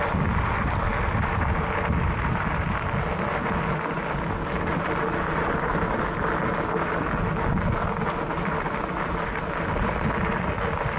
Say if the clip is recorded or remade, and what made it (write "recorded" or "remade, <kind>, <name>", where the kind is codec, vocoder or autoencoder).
recorded